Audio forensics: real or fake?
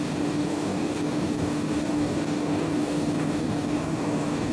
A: fake